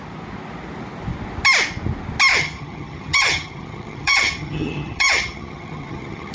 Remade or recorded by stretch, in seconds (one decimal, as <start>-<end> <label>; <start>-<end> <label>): 0.0-2.3 recorded; 2.3-6.3 remade